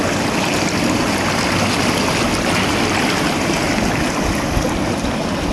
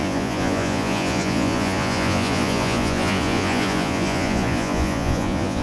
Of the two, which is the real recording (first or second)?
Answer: first